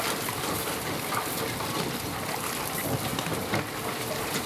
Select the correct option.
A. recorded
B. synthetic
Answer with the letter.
B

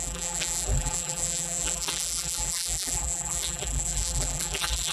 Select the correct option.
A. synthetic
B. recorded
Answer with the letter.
A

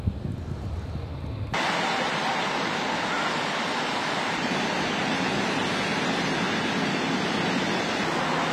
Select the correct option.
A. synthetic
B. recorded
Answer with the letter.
B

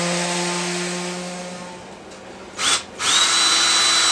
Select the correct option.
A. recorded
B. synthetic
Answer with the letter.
A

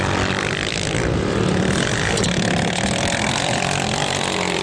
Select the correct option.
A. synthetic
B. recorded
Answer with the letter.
A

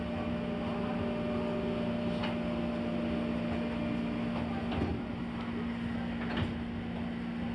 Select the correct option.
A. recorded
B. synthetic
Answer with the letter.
A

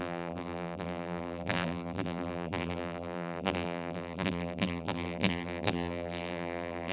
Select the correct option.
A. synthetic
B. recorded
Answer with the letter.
A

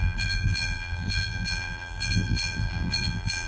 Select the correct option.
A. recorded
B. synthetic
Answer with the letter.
B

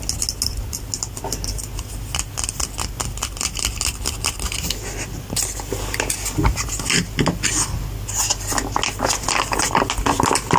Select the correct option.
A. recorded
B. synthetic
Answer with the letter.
A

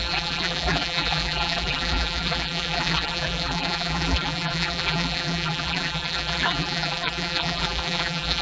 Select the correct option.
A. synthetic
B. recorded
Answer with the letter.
A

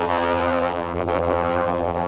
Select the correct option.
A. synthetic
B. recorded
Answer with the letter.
A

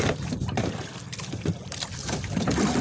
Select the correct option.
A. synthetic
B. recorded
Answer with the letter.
A